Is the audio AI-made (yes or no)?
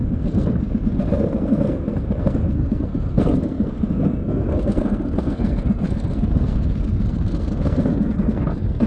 yes